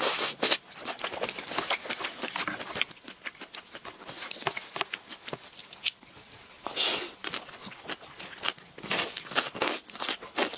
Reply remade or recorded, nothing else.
recorded